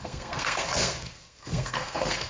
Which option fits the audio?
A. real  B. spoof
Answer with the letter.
B